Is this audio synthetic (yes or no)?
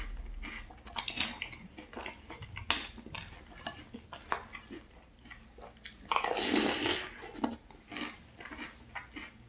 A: no